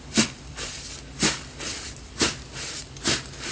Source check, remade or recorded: remade